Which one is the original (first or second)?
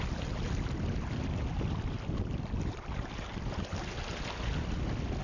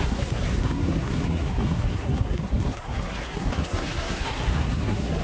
first